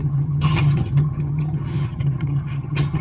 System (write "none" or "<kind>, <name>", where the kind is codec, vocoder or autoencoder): vocoder, HiFi-GAN